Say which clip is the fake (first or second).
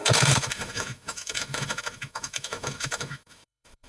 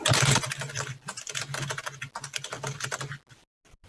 first